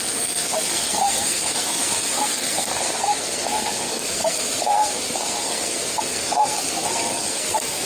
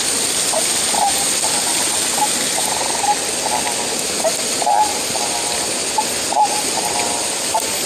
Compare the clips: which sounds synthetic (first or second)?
first